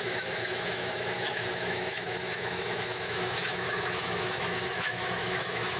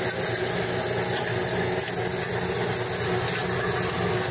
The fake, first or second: first